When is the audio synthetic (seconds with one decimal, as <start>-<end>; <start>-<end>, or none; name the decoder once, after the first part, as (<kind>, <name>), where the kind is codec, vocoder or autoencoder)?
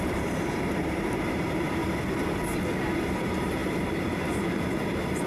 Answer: 0.0-1.8 (vocoder, BigVGAN v2); 3.0-5.3